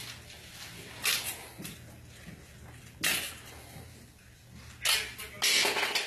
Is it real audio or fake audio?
real